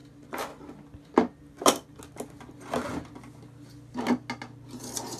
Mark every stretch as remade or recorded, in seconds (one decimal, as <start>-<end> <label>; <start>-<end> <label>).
0.0-5.2 recorded